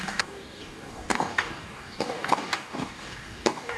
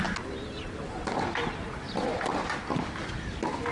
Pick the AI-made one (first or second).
first